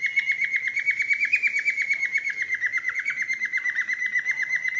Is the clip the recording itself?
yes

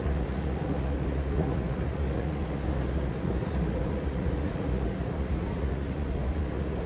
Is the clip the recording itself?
no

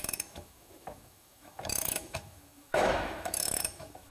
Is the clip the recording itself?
no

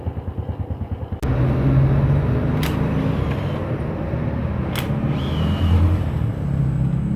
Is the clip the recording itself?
yes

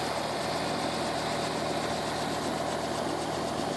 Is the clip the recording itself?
yes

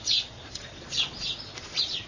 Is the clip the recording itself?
no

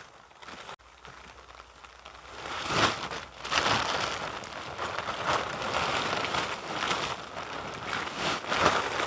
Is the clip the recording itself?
yes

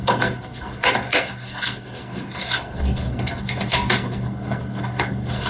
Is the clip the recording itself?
no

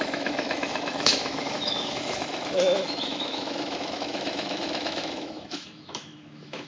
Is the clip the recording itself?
no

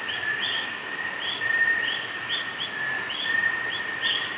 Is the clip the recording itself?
yes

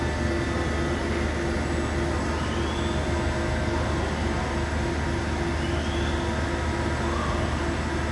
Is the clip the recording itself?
yes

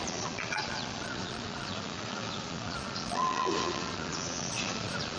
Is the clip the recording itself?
no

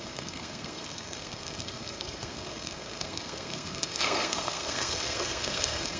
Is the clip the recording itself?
no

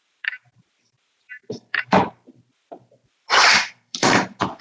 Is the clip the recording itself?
no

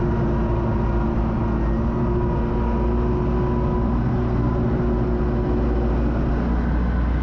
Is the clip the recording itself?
yes